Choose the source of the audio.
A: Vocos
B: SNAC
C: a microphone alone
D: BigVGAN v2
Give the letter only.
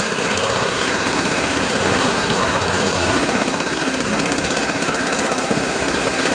B